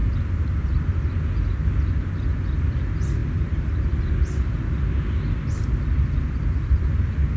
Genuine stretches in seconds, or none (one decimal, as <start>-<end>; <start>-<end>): 0.0-7.4